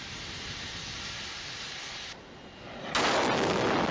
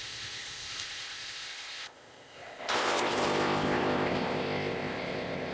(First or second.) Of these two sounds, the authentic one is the first